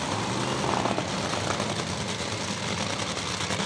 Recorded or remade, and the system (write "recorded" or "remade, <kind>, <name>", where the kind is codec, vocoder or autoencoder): recorded